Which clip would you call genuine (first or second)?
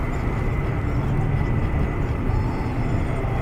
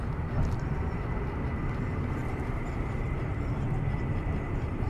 first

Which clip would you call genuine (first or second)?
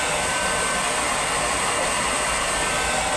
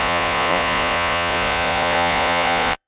first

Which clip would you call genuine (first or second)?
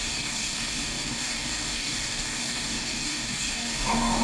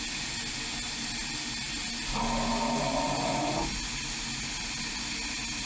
second